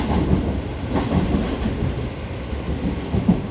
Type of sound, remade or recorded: recorded